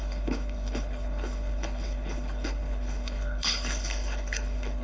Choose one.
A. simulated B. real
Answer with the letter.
A